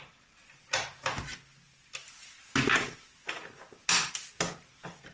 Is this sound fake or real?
real